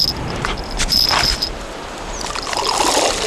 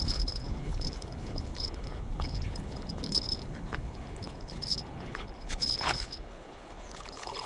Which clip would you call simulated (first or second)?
second